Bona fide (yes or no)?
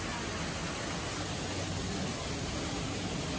yes